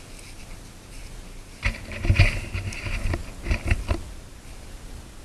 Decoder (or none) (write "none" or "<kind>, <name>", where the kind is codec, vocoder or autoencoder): none